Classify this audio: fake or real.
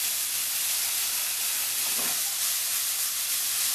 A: fake